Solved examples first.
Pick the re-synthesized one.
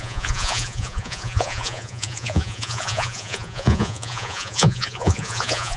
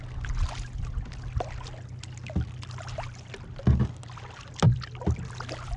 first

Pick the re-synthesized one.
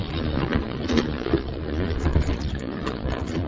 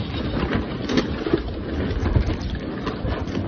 first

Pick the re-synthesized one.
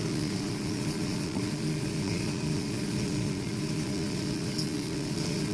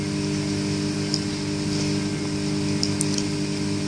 first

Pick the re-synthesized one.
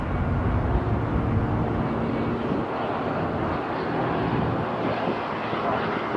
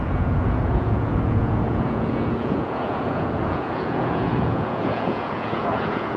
second